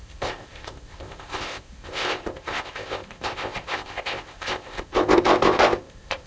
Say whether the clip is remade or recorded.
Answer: remade